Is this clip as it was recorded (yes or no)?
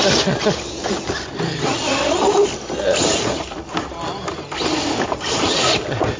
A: yes